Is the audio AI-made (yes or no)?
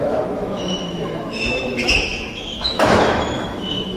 yes